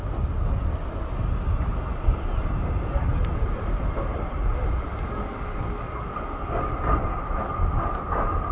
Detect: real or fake real